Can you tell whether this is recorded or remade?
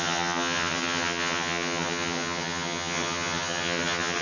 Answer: remade